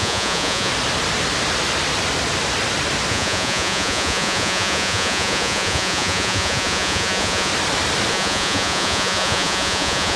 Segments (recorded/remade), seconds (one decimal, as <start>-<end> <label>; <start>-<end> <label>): 0.0-0.7 remade; 0.7-3.1 recorded; 3.1-7.5 remade; 7.5-8.1 recorded; 8.1-10.2 remade